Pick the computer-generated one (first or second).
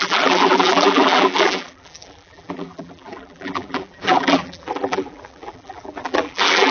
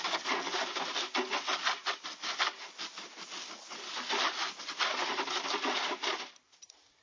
first